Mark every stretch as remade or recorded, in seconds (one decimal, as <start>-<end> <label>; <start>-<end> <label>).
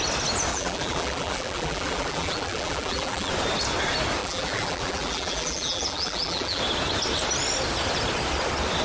0.0-0.5 recorded; 0.5-3.3 remade; 3.3-4.2 recorded; 4.2-6.6 remade; 6.6-8.8 recorded